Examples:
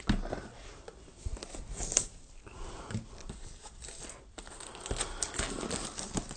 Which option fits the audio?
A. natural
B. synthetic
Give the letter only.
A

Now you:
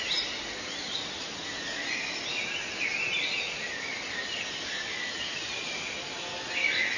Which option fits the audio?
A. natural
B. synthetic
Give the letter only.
A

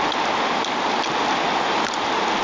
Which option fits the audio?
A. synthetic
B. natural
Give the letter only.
B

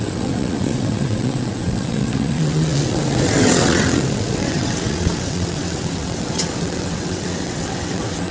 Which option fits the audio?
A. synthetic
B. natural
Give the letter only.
A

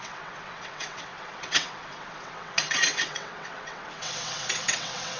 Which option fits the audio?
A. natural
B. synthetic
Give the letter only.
B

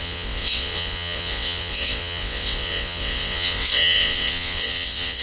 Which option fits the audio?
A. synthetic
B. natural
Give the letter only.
A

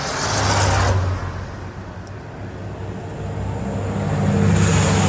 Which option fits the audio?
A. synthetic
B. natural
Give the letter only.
B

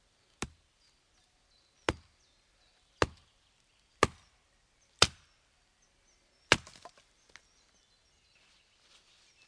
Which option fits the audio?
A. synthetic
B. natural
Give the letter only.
B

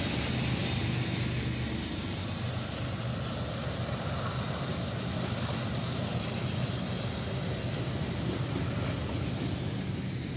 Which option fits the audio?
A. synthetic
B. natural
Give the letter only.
B